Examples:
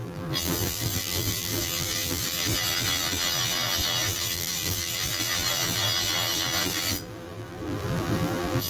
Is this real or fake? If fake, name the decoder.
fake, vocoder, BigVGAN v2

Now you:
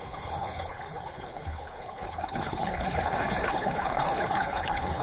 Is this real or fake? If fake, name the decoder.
fake, codec, HILCodec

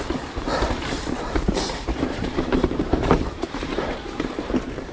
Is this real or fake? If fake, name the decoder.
fake, vocoder, BigVGAN v2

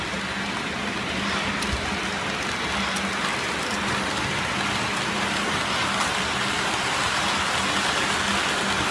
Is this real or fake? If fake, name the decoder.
real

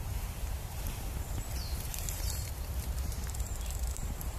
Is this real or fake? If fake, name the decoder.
fake, vocoder, BigVGAN v2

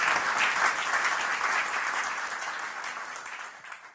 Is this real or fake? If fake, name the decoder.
real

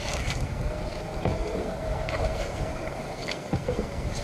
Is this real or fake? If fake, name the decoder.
fake, codec, SNAC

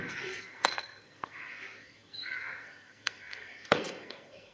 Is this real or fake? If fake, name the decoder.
fake, codec, SNAC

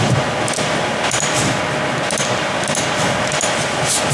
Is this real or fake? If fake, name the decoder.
real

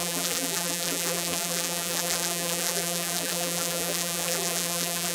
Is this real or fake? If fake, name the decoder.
fake, vocoder, BigVGAN v2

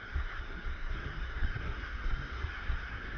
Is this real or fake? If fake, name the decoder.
fake, codec, SNAC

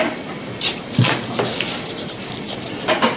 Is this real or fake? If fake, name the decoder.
real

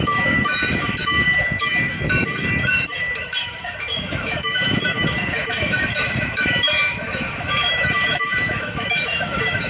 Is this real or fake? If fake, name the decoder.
fake, autoencoder, DAC-VAE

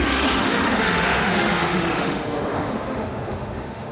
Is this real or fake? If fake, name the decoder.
fake, autoencoder, DAC-VAE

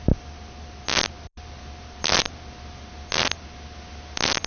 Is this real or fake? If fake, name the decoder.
real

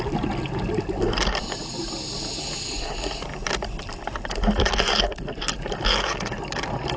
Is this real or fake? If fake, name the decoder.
real